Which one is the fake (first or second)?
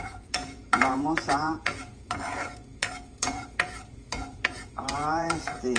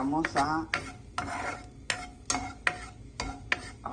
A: first